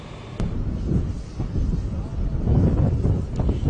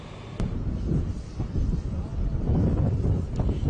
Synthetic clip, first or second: second